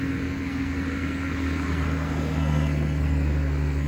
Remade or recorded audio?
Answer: remade